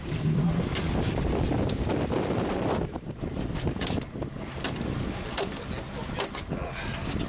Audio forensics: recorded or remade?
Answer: recorded